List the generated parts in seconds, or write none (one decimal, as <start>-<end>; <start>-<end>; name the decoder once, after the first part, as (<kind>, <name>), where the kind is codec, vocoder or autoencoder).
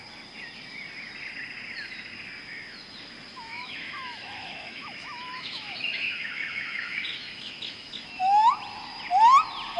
3.3-8.5 (autoencoder, DAC-VAE)